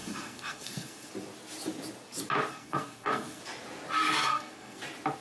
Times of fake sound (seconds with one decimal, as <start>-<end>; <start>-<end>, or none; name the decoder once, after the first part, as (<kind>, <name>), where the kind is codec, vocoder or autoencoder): 0.0-1.1 (codec, SNAC); 2.5-3.4; 4.3-4.8